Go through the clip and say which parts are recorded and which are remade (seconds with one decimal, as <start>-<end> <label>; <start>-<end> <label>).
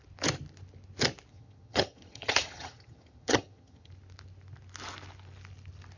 0.0-1.3 recorded; 1.3-3.9 remade; 3.9-6.0 recorded